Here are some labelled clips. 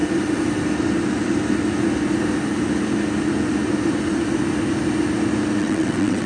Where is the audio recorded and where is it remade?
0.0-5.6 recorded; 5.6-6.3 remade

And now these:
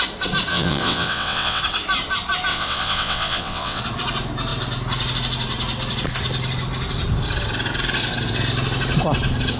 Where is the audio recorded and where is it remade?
0.0-0.5 recorded; 0.5-1.6 remade; 1.6-2.5 recorded; 2.5-3.8 remade; 3.8-9.6 recorded

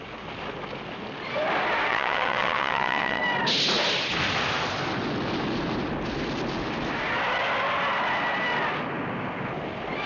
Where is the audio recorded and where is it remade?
0.0-1.9 recorded; 1.9-3.2 remade; 3.2-10.1 recorded

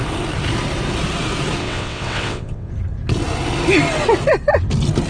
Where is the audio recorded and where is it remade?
0.0-1.6 recorded; 1.6-2.7 remade; 2.7-5.1 recorded